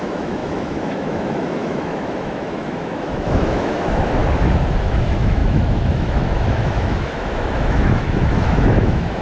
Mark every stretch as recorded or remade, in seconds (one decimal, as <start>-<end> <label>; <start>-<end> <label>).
0.0-4.2 remade; 4.2-4.8 recorded; 4.8-9.2 remade